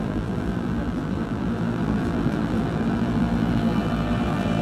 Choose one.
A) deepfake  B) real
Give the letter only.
A